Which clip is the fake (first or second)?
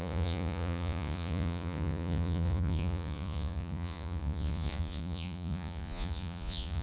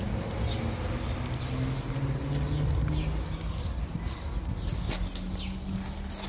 first